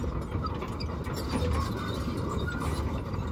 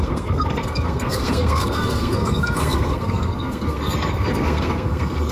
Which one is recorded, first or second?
first